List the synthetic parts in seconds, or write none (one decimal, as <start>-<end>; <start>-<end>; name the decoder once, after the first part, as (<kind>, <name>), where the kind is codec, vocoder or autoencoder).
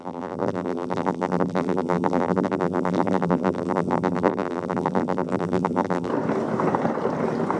0.0-6.1 (vocoder, BigVGAN v2)